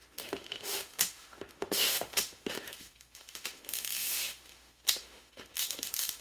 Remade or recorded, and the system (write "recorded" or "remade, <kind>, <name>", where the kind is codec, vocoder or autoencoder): remade, autoencoder, DAC-VAE